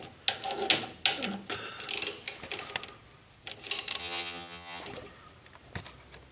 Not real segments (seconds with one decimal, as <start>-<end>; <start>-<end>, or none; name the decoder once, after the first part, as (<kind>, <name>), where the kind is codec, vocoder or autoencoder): 4.0-4.8 (vocoder, HiFi-GAN)